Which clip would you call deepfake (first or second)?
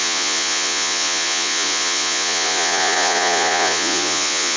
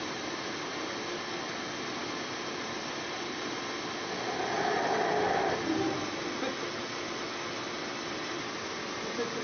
first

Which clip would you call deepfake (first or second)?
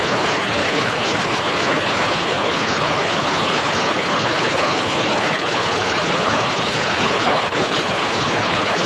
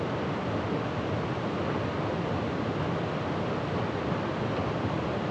first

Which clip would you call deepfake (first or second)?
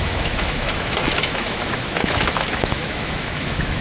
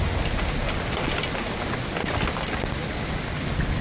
first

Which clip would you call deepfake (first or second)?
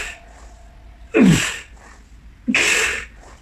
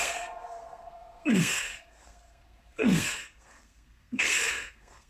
second